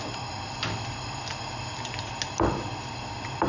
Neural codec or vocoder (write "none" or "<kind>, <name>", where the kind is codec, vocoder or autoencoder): none